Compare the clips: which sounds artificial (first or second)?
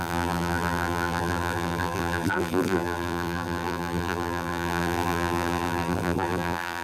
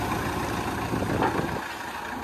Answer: first